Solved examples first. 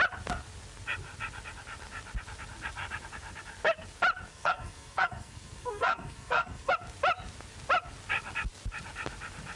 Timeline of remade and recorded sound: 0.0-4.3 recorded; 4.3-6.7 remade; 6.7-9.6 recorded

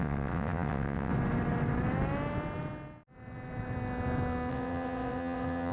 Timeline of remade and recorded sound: 0.0-1.1 remade; 1.1-4.5 recorded; 4.5-5.7 remade

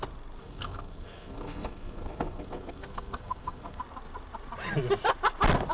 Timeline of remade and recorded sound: 0.0-0.4 recorded; 0.4-3.8 remade; 3.8-5.7 recorded

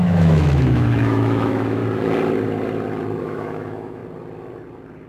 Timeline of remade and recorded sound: 0.0-1.8 remade; 1.8-3.2 recorded; 3.2-4.0 remade; 4.0-5.1 recorded

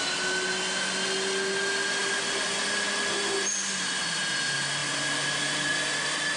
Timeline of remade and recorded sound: 0.0-6.4 recorded

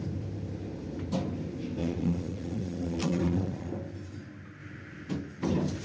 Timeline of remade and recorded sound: 0.0-1.8 recorded; 1.8-3.7 remade; 3.7-5.8 recorded